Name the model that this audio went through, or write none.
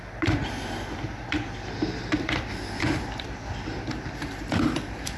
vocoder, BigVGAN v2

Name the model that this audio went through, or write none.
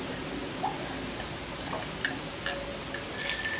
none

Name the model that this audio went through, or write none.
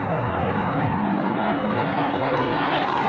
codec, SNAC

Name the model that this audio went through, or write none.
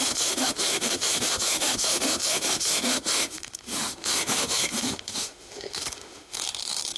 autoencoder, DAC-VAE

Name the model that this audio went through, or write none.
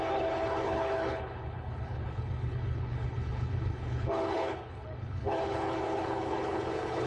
codec, HILCodec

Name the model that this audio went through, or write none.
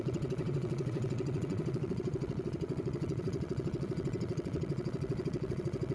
vocoder, WaveNeXt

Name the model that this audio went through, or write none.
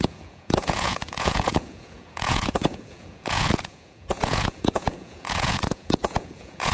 vocoder, Vocos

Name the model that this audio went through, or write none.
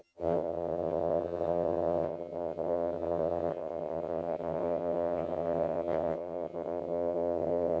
vocoder, HiFi-GAN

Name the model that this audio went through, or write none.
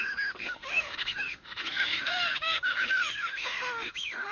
autoencoder, DAC-VAE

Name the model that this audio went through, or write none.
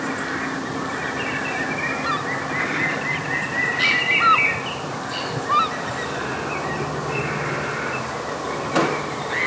none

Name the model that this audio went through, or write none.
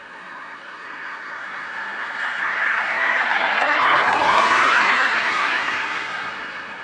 codec, SNAC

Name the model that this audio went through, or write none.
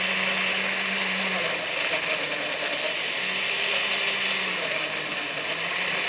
none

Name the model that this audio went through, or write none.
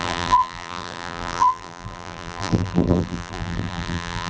vocoder, BigVGAN v2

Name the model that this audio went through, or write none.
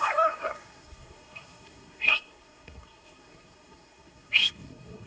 codec, SNAC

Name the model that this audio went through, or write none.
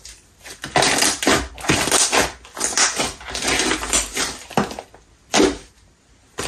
none